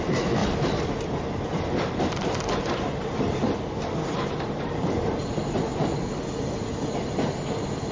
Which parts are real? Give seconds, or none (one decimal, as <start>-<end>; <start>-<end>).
0.0-7.9